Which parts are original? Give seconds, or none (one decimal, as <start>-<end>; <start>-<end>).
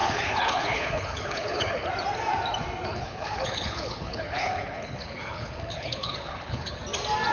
1.9-2.9; 6.8-7.3